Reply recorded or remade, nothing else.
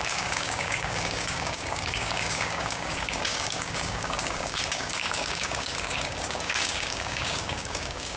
remade